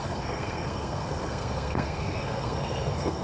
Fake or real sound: fake